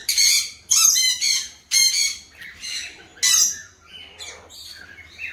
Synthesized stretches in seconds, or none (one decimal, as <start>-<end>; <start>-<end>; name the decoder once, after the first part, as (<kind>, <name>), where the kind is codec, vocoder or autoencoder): 0.0-1.9 (vocoder, BigVGAN v2)

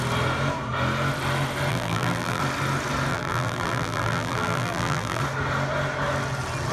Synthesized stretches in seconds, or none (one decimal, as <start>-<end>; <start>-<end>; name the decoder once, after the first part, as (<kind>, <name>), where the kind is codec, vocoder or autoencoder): 1.7-2.4 (vocoder, BigVGAN v2); 3.1-5.2

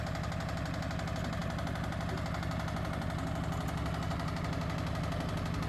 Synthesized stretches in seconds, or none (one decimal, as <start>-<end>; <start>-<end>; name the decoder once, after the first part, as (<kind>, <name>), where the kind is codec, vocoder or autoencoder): none

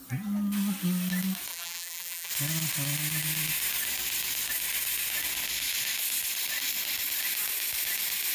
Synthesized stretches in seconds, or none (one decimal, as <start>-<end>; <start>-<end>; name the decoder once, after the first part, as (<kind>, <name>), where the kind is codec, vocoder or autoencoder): 1.5-2.3 (vocoder, BigVGAN v2)

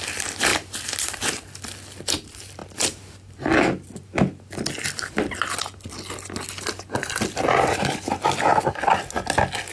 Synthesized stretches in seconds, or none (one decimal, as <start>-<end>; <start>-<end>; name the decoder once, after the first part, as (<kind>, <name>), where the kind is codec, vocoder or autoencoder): 0.5-1.2 (vocoder, BigVGAN v2)

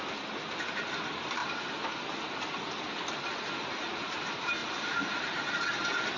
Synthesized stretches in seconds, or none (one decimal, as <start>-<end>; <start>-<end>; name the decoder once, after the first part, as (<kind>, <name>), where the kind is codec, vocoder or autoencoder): 1.4-3.1 (vocoder, BigVGAN v2); 4.6-5.1